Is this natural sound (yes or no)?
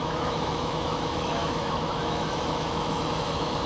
no